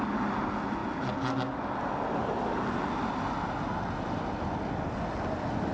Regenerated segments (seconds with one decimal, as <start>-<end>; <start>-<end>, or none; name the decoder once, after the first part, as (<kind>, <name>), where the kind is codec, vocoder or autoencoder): none